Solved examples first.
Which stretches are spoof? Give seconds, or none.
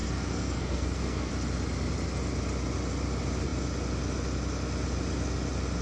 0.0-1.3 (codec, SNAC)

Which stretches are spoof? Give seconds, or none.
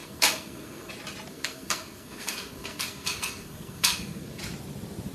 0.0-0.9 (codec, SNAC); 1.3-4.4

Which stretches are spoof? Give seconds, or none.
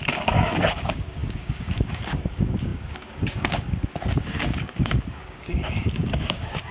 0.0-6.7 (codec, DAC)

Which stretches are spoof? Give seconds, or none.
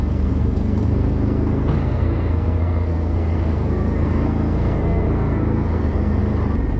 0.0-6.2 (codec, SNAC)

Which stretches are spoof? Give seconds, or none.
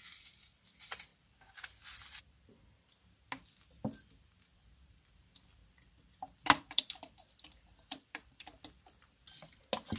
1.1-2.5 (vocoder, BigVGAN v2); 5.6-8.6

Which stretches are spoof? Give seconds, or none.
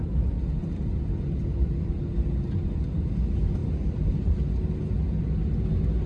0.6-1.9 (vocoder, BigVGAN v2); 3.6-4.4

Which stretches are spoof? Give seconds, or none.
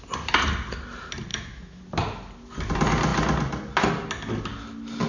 1.3-1.8 (autoencoder, DAC-VAE)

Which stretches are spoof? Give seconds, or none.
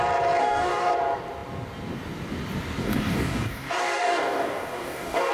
0.4-0.9 (codec, DAC); 2.8-5.3